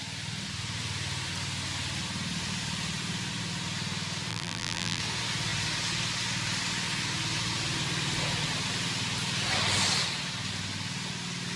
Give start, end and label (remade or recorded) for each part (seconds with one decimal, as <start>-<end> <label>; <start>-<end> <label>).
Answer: 0.0-4.3 recorded; 4.3-5.0 remade; 5.0-11.6 recorded